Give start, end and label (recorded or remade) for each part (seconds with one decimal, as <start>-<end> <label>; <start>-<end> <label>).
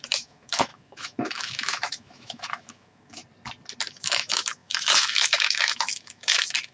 0.0-3.2 remade; 3.2-3.9 recorded; 3.9-6.7 remade